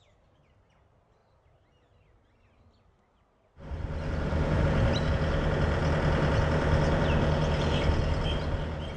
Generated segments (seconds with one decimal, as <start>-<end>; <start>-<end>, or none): none